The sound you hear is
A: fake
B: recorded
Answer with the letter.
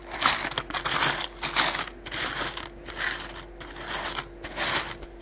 B